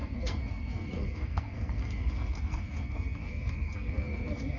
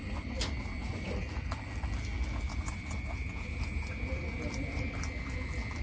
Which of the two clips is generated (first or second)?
first